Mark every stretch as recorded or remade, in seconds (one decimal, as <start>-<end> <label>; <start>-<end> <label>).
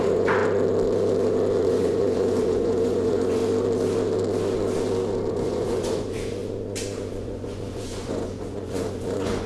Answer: 0.0-0.4 remade; 0.4-1.6 recorded; 1.6-3.4 remade; 3.4-5.3 recorded; 5.3-6.4 remade; 6.4-7.1 recorded; 7.1-9.5 remade